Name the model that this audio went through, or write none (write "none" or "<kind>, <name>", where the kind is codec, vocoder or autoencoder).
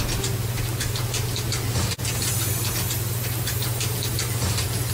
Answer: none